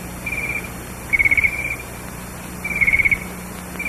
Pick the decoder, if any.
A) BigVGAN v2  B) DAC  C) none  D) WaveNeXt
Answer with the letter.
C